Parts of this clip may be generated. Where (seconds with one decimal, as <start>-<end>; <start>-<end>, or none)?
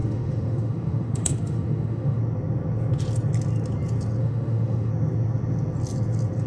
0.0-2.2; 4.2-4.9